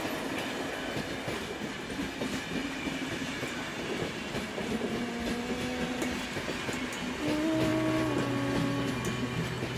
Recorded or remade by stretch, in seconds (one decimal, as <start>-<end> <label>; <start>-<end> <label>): 0.0-2.6 recorded; 2.6-5.1 remade; 5.1-9.8 recorded